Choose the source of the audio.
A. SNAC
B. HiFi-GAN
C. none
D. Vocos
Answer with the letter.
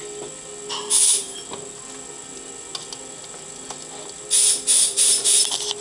C